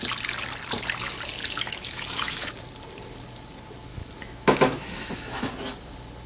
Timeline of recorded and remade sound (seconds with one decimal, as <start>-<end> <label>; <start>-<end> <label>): 0.0-1.4 recorded; 1.4-2.5 remade; 2.5-3.9 recorded; 3.9-5.5 remade; 5.5-6.3 recorded